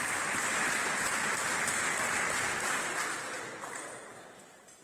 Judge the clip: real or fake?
real